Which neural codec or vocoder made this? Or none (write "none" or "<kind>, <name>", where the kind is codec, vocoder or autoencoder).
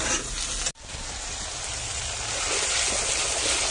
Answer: none